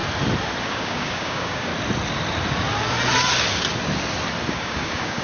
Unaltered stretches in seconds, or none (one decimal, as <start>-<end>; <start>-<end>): 0.0-0.6; 1.7-4.5